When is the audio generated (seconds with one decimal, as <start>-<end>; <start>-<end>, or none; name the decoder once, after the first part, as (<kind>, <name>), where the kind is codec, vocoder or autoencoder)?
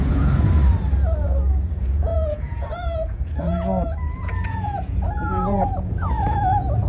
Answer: 0.0-0.6 (vocoder, Vocos); 1.7-6.9